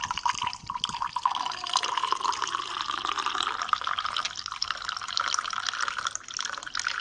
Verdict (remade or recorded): recorded